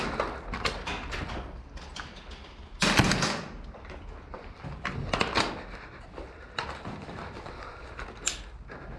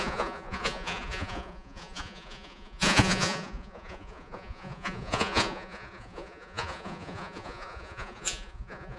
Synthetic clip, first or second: second